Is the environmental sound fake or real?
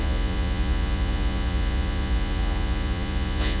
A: fake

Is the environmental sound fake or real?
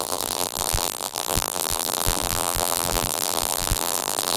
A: fake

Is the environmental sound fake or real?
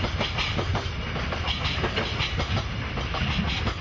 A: real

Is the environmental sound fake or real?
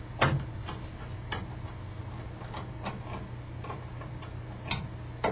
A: real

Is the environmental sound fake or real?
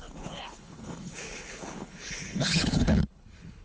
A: fake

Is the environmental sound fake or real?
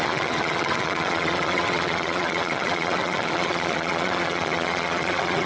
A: fake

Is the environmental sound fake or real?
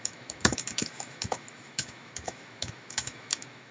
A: fake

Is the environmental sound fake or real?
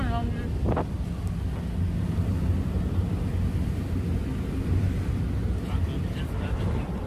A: real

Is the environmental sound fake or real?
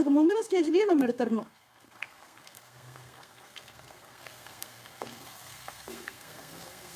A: fake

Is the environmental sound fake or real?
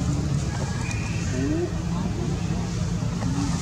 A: real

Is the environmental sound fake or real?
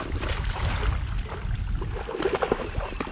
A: real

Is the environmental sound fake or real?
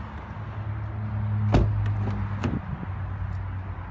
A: real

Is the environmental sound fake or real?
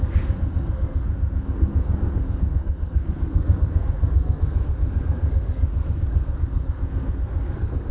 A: fake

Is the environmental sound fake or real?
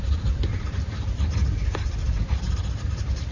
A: fake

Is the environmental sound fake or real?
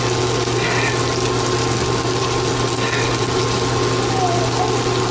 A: real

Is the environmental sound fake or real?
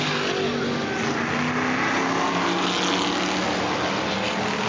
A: real